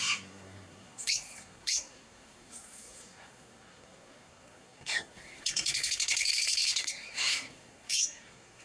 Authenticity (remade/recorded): remade